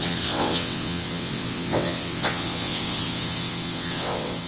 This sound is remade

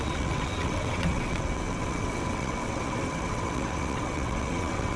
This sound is remade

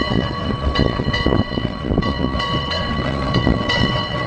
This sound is remade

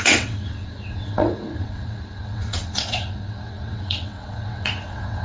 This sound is remade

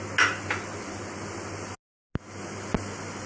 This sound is recorded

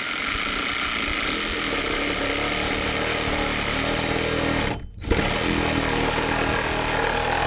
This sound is recorded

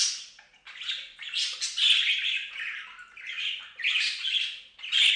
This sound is recorded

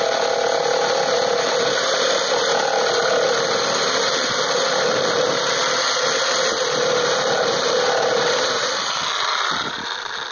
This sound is recorded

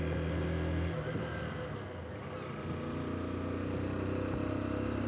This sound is recorded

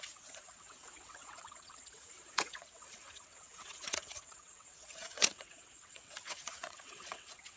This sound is remade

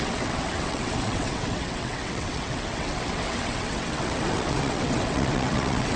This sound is remade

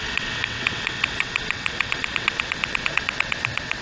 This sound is remade